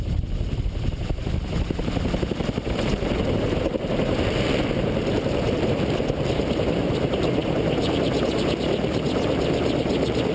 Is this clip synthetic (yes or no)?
yes